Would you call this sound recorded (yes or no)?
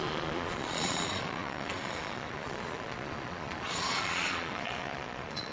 no